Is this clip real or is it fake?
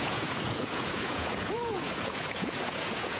fake